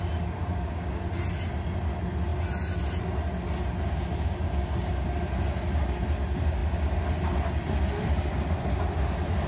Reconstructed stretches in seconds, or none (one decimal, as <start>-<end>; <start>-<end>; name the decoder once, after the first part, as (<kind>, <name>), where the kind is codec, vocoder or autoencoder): 0.4-1.1 (codec, DAC)